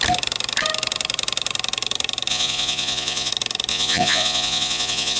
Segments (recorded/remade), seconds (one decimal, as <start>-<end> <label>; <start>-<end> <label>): 0.0-2.3 recorded; 2.3-3.3 remade; 3.3-3.7 recorded; 3.7-5.2 remade